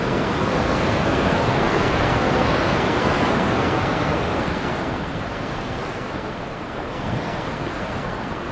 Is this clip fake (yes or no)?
yes